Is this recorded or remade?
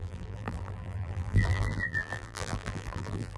remade